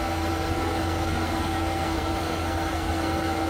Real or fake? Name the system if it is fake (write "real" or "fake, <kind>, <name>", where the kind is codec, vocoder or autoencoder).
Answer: fake, codec, SNAC